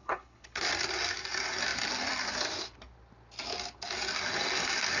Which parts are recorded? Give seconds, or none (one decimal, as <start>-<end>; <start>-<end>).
0.7-5.0